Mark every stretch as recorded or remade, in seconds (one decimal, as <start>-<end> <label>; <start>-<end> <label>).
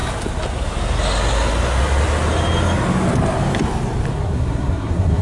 0.0-4.1 recorded; 4.1-5.2 remade